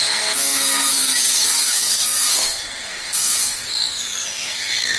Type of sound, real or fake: fake